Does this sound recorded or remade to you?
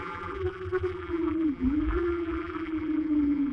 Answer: remade